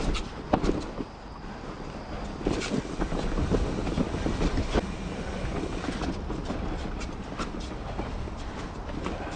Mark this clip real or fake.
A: real